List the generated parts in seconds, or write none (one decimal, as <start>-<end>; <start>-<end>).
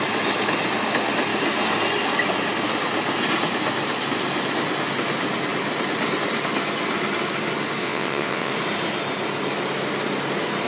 7.8-8.5